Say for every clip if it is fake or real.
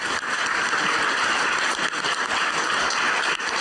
real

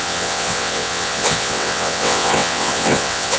fake